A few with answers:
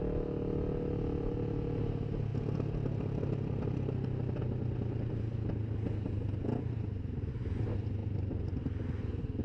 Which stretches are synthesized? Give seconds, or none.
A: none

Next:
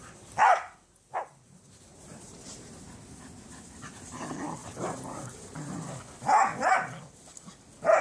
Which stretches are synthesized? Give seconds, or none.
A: 1.9-2.8 (vocoder, BigVGAN v2); 4.6-5.9

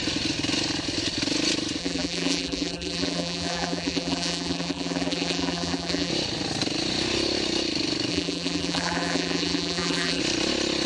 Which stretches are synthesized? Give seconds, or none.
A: 1.8-6.1 (vocoder, BigVGAN v2); 8.1-10.2

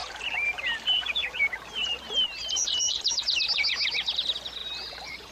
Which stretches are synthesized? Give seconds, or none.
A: 0.0-3.2 (vocoder, BigVGAN v2); 4.6-5.3